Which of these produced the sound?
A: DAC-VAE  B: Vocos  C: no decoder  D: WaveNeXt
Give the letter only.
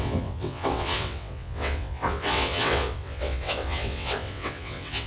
D